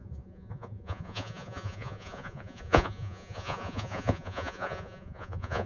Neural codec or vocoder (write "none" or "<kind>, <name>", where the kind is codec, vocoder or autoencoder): vocoder, Vocos